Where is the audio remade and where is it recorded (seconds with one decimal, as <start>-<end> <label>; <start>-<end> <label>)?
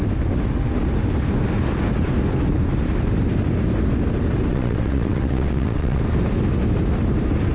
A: 0.0-4.5 recorded; 4.5-6.0 remade; 6.0-7.5 recorded